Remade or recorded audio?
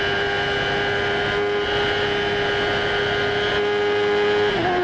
recorded